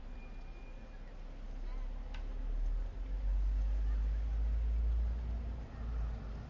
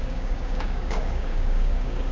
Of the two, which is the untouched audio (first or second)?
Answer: first